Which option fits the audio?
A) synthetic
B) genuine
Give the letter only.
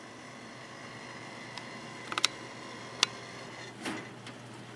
B